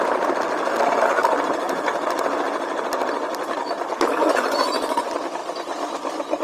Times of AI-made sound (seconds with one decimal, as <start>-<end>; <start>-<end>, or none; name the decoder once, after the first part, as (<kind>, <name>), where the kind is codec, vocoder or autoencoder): 1.2-5.0 (vocoder, BigVGAN v2)